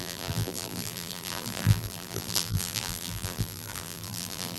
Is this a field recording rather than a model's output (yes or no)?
no